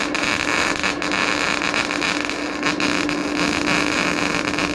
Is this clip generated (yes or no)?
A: no